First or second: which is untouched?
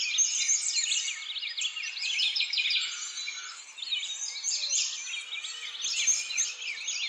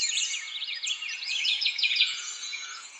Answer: first